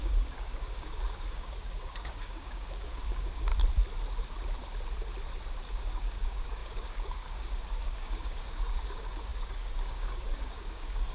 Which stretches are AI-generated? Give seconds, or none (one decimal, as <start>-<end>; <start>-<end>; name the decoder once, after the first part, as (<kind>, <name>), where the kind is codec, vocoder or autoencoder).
0.0-3.5 (codec, DAC); 5.7-11.1

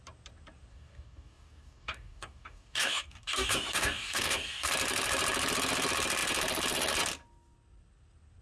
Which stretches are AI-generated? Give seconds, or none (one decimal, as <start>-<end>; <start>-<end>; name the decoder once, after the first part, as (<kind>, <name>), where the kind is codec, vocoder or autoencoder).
0.7-4.7 (codec, DAC)

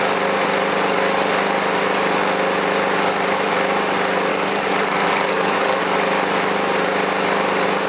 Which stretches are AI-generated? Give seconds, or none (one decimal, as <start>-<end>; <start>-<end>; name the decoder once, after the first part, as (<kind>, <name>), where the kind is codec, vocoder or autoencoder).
4.3-5.8 (codec, DAC)

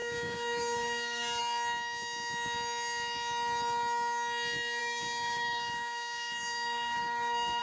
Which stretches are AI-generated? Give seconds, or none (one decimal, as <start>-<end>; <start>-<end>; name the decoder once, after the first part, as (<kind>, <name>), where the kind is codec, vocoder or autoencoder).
0.0-1.4 (codec, DAC); 4.8-7.6

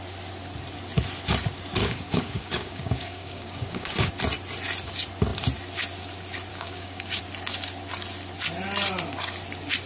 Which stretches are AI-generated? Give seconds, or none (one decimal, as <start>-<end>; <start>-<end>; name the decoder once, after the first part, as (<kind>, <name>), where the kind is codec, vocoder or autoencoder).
1.8-4.1 (codec, DAC); 6.5-7.2